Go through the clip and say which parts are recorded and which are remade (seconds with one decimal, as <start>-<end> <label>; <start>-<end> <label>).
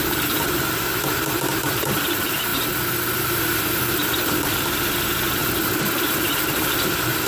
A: 0.0-2.5 remade; 2.5-3.2 recorded; 3.2-5.4 remade; 5.4-6.1 recorded; 6.1-7.3 remade